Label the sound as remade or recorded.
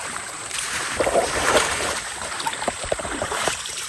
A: remade